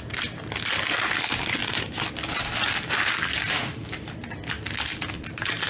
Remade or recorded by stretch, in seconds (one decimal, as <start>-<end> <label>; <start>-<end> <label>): 0.0-5.7 recorded